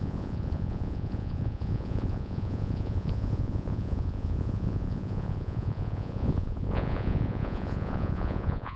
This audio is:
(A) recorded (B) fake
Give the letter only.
B